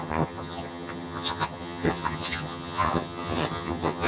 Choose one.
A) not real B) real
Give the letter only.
A